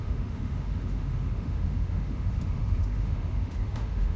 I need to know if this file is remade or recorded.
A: remade